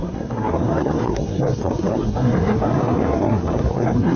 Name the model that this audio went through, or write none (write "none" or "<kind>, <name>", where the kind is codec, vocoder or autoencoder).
codec, SNAC